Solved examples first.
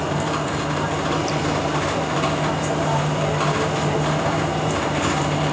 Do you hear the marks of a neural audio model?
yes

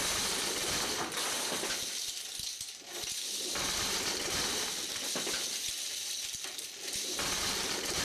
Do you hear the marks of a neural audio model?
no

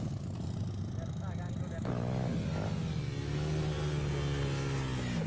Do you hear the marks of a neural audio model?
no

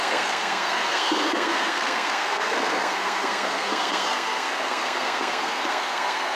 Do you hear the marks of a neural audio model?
yes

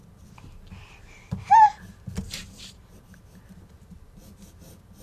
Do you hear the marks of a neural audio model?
no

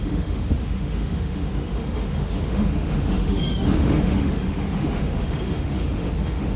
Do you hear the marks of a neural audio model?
yes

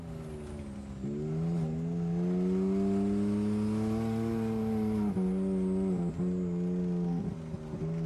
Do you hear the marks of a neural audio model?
no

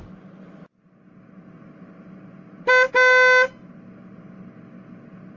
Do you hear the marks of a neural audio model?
no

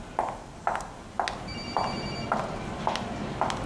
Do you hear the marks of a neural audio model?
no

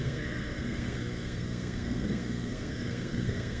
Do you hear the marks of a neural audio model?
yes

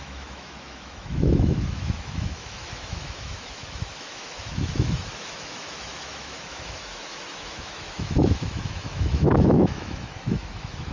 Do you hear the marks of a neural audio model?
yes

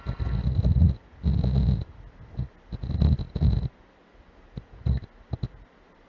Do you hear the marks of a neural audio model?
no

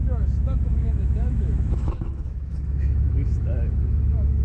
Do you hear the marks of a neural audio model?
yes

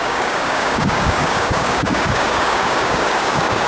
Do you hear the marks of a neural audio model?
yes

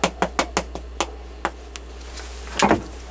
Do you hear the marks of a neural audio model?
no